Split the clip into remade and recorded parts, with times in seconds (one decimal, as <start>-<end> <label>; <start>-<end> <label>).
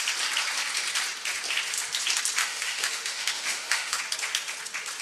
0.0-2.4 recorded; 2.4-4.0 remade; 4.0-5.0 recorded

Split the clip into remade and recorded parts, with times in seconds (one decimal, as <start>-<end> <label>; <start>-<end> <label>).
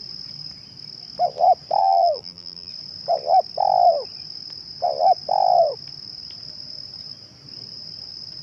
0.0-1.8 recorded; 1.8-2.7 remade; 2.7-8.4 recorded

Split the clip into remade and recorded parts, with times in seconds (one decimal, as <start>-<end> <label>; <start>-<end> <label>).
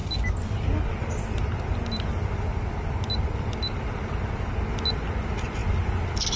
0.0-6.4 recorded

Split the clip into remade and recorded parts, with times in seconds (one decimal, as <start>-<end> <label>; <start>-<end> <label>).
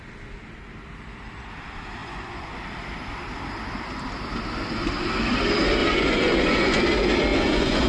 0.0-2.0 recorded; 2.0-2.6 remade; 2.6-5.8 recorded; 5.8-6.8 remade; 6.8-7.3 recorded; 7.3-7.9 remade